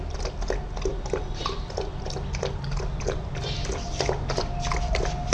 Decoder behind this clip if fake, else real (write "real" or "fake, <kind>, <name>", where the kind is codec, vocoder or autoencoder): real